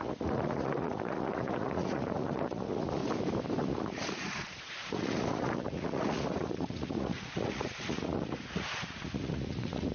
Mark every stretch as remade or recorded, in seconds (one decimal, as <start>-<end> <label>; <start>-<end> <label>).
0.0-3.0 remade; 3.0-3.6 recorded; 3.6-9.9 remade